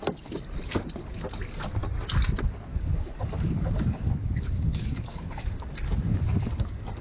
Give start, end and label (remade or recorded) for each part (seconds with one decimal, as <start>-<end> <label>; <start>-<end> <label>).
0.0-2.7 recorded; 2.7-7.0 remade